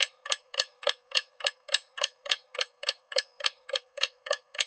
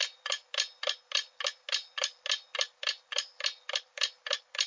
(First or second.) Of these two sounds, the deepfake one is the first